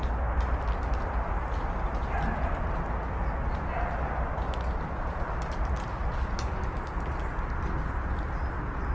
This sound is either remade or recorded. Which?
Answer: recorded